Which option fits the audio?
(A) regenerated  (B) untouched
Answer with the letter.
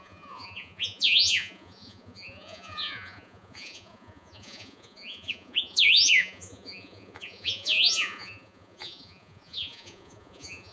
A